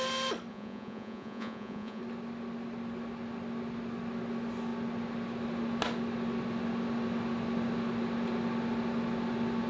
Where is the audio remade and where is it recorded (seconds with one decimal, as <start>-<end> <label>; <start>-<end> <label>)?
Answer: 0.0-0.5 recorded; 0.5-2.0 remade; 2.0-9.7 recorded